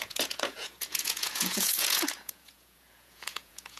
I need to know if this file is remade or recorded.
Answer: remade